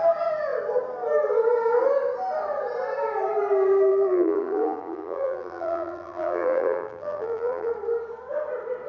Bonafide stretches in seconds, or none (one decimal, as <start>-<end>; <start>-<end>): 0.0-3.9; 7.7-8.9